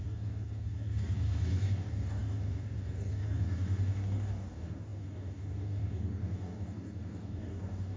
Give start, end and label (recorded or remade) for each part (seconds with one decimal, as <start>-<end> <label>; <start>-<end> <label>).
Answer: 0.0-8.0 remade